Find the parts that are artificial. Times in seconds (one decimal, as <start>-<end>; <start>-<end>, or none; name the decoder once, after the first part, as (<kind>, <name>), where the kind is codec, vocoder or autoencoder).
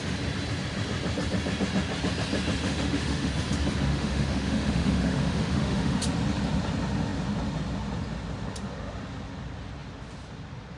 2.6-3.3 (autoencoder, DAC-VAE); 3.9-6.0